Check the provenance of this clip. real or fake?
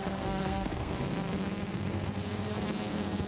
fake